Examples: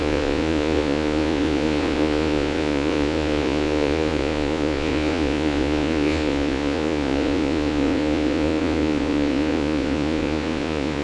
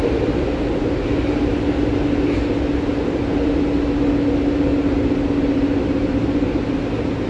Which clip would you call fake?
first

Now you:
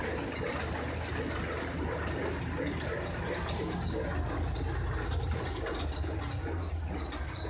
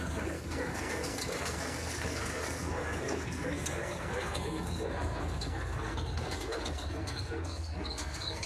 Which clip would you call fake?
second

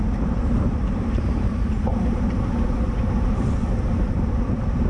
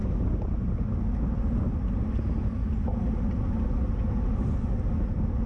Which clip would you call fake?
first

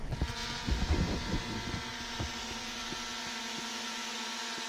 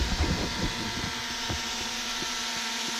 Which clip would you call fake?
second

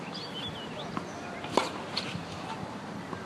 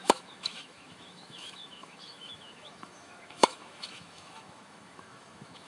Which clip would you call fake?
second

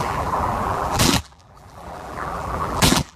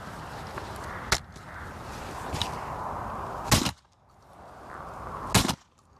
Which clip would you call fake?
first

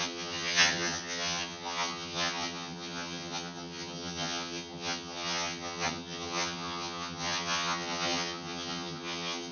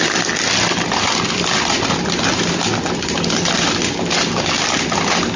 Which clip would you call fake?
first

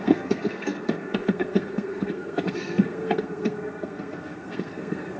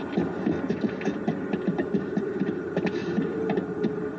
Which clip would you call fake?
first